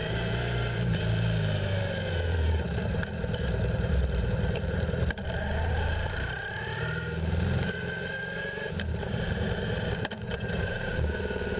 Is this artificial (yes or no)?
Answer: yes